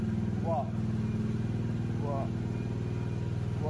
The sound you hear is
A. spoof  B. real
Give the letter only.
B